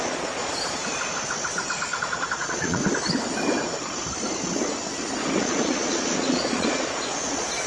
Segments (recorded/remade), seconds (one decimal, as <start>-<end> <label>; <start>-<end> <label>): 0.0-0.8 remade; 0.8-2.0 recorded; 2.0-2.8 remade; 2.8-5.4 recorded; 5.4-7.7 remade